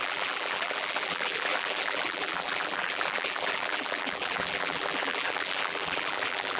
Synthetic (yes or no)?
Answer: yes